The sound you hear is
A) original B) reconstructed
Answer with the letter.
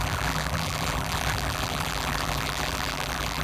B